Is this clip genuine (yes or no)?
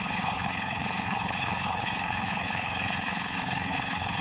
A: no